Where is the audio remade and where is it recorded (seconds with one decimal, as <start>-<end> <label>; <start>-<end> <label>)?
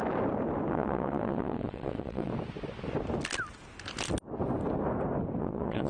0.0-0.7 recorded; 0.7-2.3 remade; 2.3-5.4 recorded; 5.4-5.9 remade